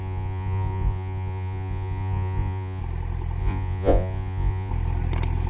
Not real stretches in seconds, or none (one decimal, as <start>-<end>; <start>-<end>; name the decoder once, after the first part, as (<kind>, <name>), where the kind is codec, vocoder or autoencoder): 0.0-2.8 (vocoder, Vocos); 3.4-4.7